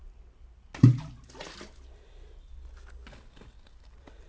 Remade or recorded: recorded